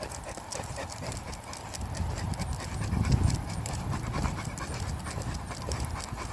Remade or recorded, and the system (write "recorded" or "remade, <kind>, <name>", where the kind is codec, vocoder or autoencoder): recorded